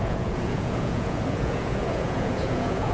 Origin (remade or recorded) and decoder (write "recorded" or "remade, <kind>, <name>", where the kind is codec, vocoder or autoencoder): remade, vocoder, Vocos